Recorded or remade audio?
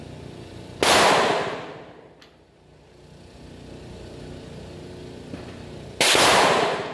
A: recorded